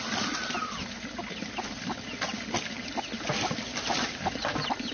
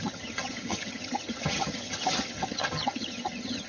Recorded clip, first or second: first